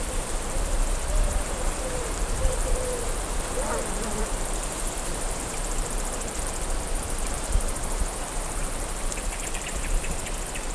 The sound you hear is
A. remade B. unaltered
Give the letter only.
A